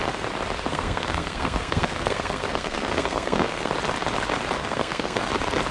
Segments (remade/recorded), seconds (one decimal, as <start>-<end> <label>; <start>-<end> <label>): 0.0-0.7 recorded; 0.7-3.7 remade; 3.7-4.6 recorded; 4.6-5.3 remade; 5.3-5.7 recorded